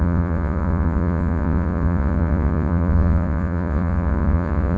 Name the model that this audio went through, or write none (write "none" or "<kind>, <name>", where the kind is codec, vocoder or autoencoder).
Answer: vocoder, Vocos